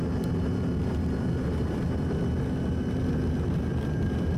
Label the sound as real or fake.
real